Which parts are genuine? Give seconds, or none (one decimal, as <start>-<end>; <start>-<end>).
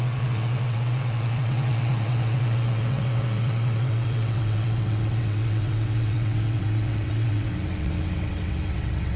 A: none